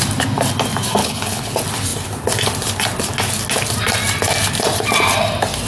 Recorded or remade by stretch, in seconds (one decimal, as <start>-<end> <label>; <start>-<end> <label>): 0.0-1.0 recorded; 1.0-1.5 remade; 1.5-5.7 recorded